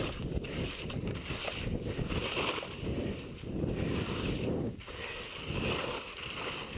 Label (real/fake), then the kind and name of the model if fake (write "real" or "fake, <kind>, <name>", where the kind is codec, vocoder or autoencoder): real